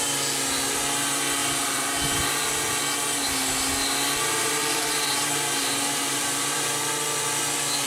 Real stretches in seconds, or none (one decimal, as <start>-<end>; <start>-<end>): 0.0-1.4; 2.3-4.4; 6.7-7.9